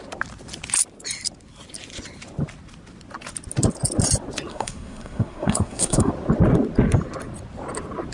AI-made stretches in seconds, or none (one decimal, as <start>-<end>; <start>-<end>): 4.5-6.1

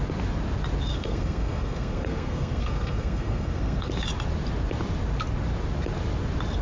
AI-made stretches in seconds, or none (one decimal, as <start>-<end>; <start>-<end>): 0.9-3.9